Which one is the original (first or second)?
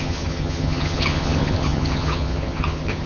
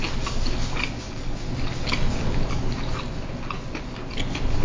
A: second